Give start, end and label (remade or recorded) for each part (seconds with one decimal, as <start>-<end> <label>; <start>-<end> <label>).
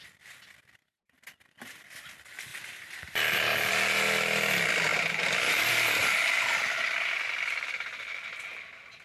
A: 0.0-2.5 recorded; 2.5-3.7 remade; 3.7-9.0 recorded